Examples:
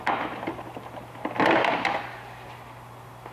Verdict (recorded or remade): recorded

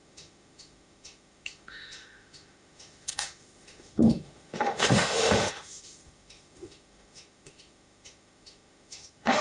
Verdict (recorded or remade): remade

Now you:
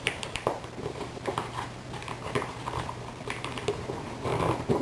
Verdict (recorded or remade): remade